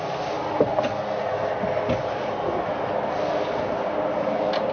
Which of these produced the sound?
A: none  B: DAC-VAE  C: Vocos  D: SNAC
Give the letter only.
A